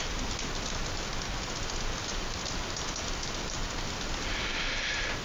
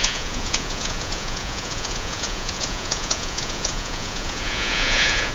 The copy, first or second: second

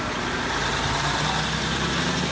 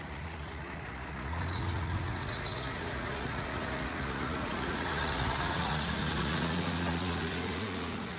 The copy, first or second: second